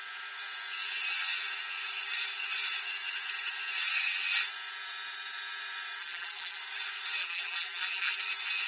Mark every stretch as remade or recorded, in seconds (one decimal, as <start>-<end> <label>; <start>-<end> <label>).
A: 0.0-6.0 recorded; 6.0-6.6 remade; 6.6-7.2 recorded; 7.2-8.2 remade; 8.2-8.7 recorded